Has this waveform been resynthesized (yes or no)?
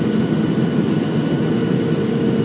no